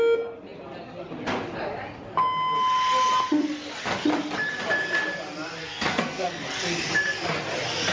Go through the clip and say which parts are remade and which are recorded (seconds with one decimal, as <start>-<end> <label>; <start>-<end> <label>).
0.0-5.6 recorded; 5.6-6.3 remade; 6.3-7.9 recorded